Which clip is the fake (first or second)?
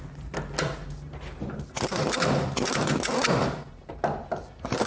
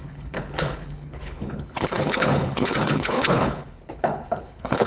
second